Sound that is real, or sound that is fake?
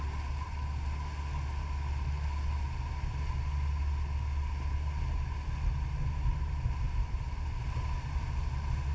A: real